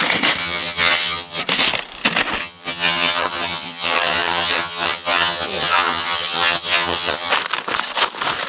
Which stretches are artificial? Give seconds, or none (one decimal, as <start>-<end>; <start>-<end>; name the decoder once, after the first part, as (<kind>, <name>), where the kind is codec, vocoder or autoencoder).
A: 0.4-1.4 (vocoder, HiFi-GAN); 2.4-7.3